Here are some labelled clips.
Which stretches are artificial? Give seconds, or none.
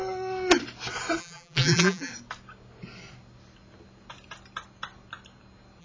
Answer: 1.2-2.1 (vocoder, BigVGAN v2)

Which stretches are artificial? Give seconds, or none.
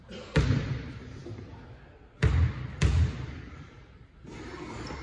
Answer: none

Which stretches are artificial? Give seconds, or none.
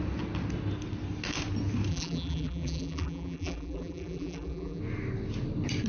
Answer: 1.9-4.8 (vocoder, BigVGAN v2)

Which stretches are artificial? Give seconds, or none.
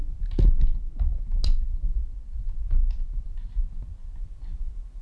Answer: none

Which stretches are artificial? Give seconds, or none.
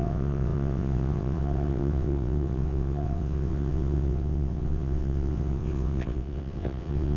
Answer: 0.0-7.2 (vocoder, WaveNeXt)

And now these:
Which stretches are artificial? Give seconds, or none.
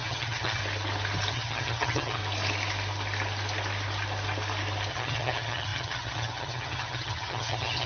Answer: 0.0-0.6 (vocoder, HiFi-GAN); 1.3-2.2; 4.9-7.9